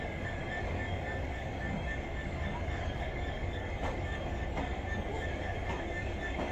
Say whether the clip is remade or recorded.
remade